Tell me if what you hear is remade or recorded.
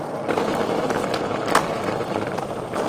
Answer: recorded